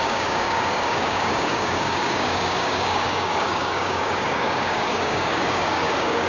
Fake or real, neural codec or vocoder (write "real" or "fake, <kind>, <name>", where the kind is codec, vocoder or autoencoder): fake, codec, DAC